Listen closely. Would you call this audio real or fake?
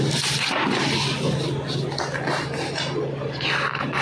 real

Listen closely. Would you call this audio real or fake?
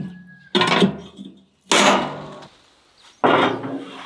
real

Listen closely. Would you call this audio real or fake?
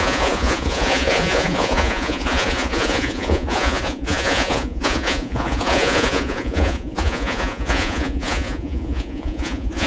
fake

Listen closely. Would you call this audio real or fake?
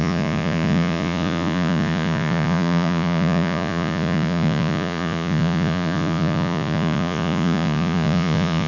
fake